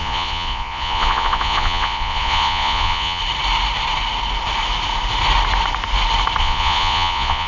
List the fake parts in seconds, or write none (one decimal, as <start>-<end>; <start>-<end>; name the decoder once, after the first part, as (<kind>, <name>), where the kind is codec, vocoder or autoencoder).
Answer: 0.0-3.2 (vocoder, Vocos); 6.4-7.5